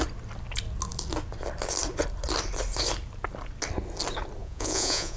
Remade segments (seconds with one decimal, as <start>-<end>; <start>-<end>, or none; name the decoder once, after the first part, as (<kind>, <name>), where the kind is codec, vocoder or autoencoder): 4.4-5.2 (vocoder, Vocos)